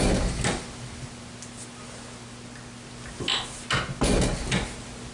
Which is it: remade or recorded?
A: recorded